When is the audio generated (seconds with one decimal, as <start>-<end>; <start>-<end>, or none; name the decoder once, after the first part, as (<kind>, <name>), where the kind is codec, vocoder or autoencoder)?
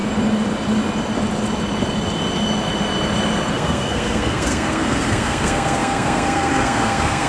3.5-7.3 (codec, SNAC)